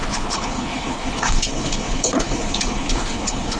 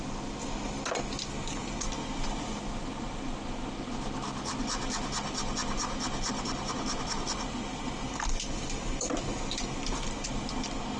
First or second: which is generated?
first